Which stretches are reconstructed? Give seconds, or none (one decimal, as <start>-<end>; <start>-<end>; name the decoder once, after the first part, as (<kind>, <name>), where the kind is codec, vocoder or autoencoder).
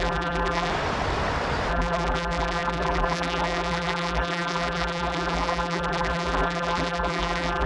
0.0-0.7 (vocoder, BigVGAN v2); 1.7-7.7